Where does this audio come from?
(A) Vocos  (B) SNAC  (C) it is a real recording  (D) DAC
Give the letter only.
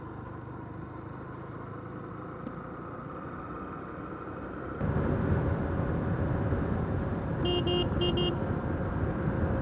C